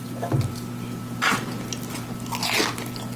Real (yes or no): yes